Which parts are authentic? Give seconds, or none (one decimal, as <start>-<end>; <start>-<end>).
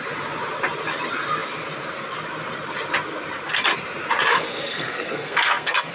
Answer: 0.0-4.3